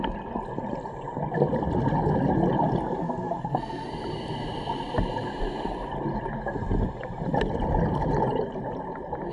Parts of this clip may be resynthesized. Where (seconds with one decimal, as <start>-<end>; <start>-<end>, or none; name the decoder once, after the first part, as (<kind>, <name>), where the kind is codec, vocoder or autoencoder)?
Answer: 3.0-3.9 (codec, SNAC)